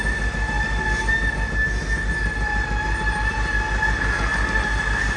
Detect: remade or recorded recorded